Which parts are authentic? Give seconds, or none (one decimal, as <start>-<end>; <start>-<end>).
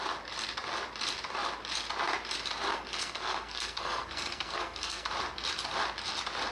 0.0-2.7; 5.1-6.5